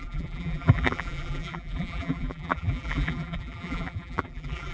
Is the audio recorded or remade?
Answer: remade